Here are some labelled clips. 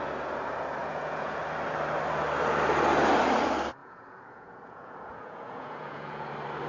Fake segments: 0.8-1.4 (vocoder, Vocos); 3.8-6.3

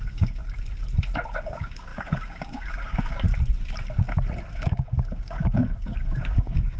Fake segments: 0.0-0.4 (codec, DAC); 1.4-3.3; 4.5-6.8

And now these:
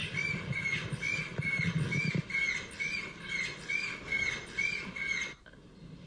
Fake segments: none

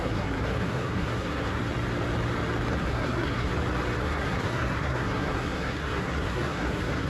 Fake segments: 0.0-1.6 (codec, SNAC); 2.8-3.5; 4.0-7.1

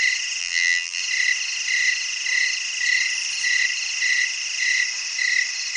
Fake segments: 0.4-1.0 (vocoder, BigVGAN v2)

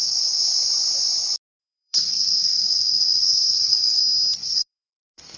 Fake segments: 1.6-4.0 (codec, SNAC); 4.4-5.4

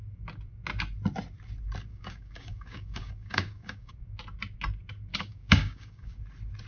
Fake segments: 1.9-3.9 (codec, DAC); 5.1-6.2

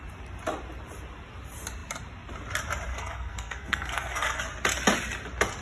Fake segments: 2.9-4.4 (codec, SNAC)